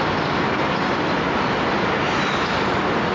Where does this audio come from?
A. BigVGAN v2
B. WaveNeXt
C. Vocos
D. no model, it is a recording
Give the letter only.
D